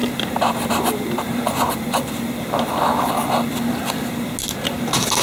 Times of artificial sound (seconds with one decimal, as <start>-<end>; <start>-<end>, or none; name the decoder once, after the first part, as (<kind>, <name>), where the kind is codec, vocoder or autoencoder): 0.0-3.1 (vocoder, BigVGAN v2)